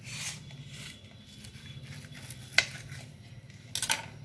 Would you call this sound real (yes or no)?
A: yes